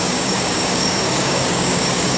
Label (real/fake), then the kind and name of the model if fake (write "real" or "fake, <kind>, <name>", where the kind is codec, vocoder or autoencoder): fake, codec, DAC